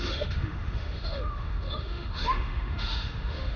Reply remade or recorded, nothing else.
remade